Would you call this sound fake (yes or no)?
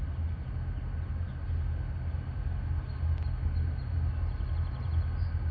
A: no